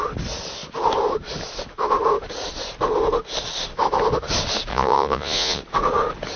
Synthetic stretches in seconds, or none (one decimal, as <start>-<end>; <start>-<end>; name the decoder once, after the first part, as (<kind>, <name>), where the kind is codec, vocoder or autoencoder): 4.7-5.6 (vocoder, Vocos)